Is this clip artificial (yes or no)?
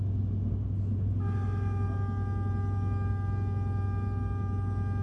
no